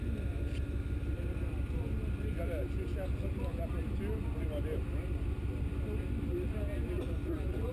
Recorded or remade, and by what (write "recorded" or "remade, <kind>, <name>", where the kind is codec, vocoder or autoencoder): recorded